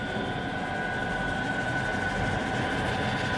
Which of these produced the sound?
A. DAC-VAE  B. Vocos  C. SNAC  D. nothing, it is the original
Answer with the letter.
D